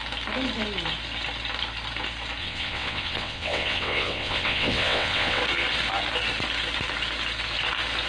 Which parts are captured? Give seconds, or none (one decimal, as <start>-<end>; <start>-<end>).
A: 0.0-2.4; 5.4-8.1